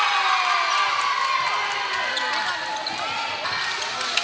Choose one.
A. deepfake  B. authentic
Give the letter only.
B